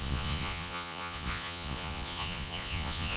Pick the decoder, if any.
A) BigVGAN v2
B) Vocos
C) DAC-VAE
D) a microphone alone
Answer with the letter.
B